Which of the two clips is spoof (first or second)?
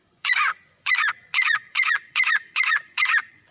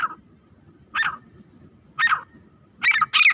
first